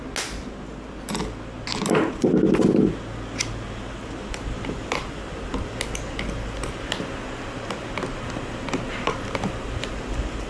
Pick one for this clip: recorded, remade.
recorded